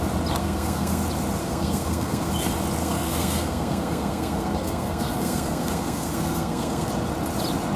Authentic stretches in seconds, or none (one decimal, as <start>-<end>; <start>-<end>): 0.0-0.4; 1.0-1.4; 2.3-2.8; 6.9-7.8